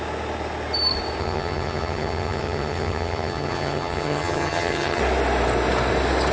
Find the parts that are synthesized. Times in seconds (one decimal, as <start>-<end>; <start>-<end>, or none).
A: 1.2-5.0